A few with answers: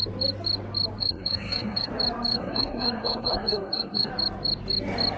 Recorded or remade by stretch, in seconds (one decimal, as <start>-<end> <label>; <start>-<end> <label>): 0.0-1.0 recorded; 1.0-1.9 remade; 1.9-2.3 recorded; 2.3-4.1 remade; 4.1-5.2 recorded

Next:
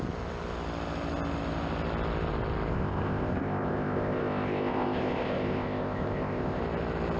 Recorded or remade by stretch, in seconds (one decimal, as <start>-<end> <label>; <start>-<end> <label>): 0.0-2.7 recorded; 2.7-6.6 remade; 6.6-7.2 recorded

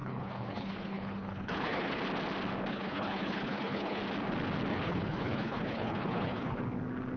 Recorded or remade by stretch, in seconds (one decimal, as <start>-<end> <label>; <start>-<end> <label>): 0.0-2.0 remade; 2.0-2.7 recorded; 2.7-4.0 remade; 4.0-4.7 recorded; 4.7-6.6 remade; 6.6-7.2 recorded